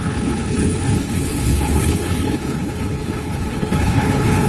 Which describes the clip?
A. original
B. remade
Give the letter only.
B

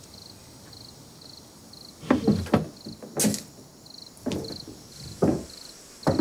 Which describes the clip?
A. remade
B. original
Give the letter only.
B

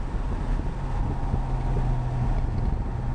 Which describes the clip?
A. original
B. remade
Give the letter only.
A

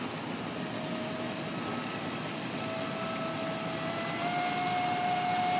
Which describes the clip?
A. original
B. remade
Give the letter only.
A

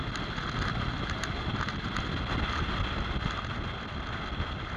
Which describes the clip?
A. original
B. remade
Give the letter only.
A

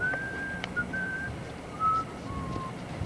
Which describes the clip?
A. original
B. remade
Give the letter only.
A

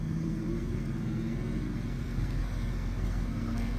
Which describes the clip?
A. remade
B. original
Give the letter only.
A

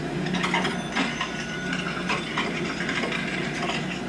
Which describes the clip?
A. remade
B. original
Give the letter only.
B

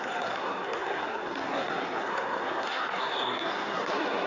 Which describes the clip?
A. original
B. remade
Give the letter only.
B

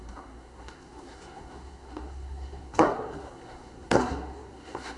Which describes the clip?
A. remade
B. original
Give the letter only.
A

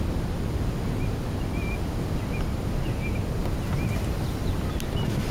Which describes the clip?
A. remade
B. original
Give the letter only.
B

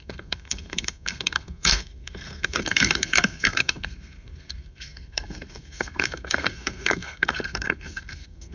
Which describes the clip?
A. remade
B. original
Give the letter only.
A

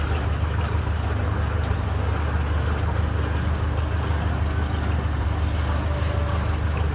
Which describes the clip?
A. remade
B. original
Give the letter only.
B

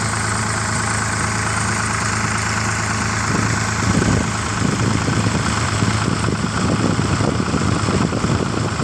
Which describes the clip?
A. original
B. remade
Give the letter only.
A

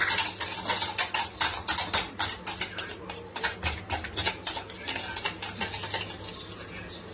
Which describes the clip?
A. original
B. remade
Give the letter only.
A